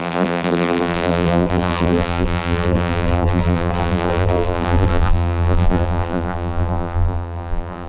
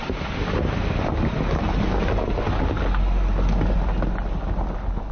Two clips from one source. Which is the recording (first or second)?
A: second